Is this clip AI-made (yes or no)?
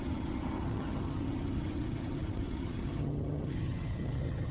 yes